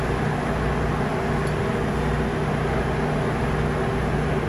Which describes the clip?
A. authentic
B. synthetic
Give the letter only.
A